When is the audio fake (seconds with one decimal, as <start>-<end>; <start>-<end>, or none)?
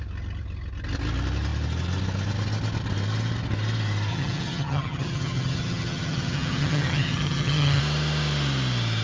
4.1-7.8